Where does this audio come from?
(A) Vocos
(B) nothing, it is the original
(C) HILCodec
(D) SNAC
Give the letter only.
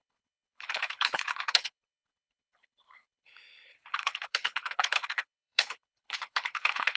C